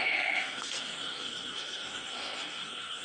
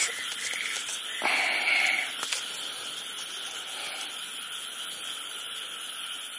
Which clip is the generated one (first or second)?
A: first